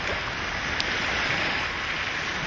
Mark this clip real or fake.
real